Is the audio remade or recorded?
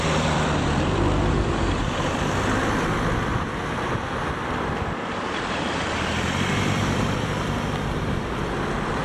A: remade